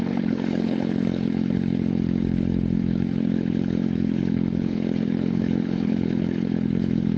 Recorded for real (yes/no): no